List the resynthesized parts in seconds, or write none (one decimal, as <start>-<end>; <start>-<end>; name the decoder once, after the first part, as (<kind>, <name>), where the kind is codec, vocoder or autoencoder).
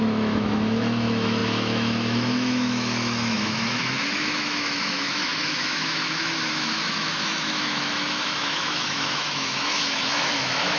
0.0-10.8 (autoencoder, DAC-VAE)